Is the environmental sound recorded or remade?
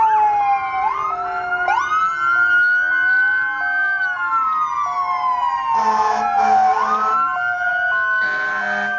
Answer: recorded